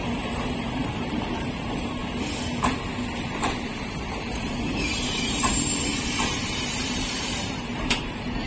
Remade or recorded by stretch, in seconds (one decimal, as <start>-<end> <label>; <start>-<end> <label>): 0.0-2.0 remade; 2.0-3.2 recorded; 3.2-8.5 remade